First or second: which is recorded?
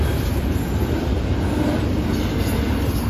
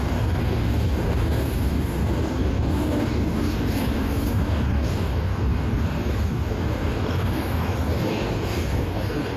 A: first